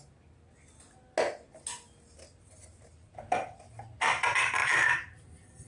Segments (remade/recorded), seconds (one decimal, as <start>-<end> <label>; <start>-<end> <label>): 0.0-4.6 recorded; 4.6-5.7 remade